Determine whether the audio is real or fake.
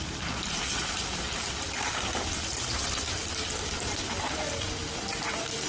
real